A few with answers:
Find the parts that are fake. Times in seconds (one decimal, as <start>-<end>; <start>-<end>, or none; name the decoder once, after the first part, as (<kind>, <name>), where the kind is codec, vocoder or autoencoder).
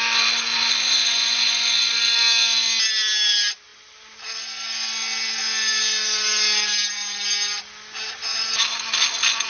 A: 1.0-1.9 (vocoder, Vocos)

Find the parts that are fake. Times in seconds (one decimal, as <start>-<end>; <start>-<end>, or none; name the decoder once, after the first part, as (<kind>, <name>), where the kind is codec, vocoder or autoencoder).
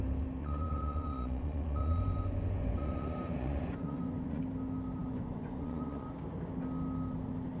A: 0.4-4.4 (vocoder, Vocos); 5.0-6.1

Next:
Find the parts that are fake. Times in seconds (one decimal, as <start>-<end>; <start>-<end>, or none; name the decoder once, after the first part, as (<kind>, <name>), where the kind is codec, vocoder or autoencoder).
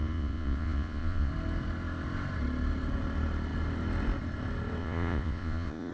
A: 0.0-1.3 (vocoder, Vocos); 4.8-5.9